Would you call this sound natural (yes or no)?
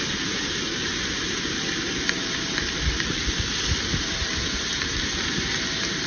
no